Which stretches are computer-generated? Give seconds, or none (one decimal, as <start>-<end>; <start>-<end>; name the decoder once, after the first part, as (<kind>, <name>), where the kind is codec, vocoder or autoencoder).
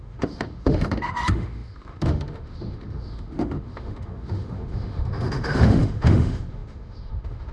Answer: 0.0-7.5 (autoencoder, DAC-VAE)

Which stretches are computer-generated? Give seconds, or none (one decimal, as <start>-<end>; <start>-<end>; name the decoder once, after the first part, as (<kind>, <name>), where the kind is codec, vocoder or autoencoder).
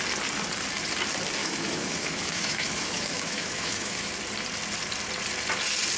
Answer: 1.4-4.1 (autoencoder, DAC-VAE)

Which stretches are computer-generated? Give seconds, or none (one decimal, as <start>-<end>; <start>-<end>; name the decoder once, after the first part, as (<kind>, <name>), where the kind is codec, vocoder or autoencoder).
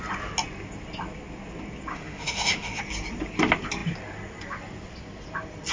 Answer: 1.9-2.8 (autoencoder, DAC-VAE)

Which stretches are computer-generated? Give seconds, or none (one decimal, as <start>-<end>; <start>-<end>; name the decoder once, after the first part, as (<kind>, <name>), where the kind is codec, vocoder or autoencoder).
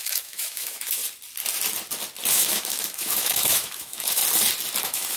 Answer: 0.0-1.0 (autoencoder, DAC-VAE); 2.3-4.2; 4.8-5.2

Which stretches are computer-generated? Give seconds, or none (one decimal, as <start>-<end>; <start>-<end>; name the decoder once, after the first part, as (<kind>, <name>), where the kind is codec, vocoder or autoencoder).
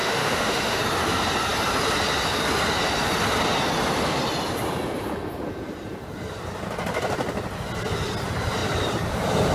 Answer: 0.0-0.8 (autoencoder, DAC-VAE)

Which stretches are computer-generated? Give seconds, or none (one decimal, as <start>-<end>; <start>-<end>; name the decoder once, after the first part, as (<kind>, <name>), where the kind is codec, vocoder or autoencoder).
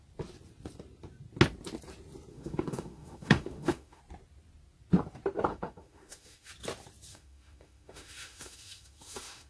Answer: 2.3-4.0 (autoencoder, DAC-VAE); 5.5-6.5; 7.1-9.5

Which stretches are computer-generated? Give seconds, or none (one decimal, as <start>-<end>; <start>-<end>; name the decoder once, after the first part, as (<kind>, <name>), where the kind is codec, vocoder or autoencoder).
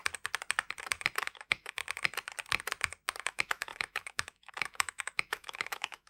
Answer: 1.2-1.8 (autoencoder, DAC-VAE); 3.2-6.1